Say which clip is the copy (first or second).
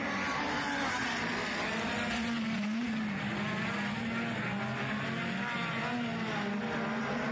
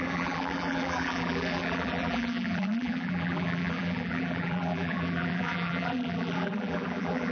second